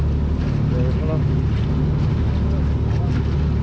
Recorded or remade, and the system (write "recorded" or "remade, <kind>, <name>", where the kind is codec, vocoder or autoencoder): recorded